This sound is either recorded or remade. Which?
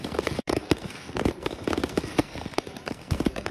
remade